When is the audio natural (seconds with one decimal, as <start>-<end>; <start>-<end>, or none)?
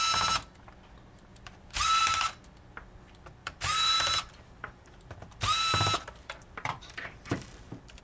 0.0-1.3; 2.0-3.4